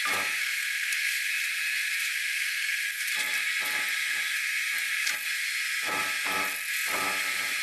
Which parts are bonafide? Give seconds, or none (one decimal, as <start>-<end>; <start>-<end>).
0.0-0.4; 1.3-2.1; 3.1-7.6